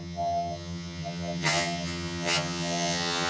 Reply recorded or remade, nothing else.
remade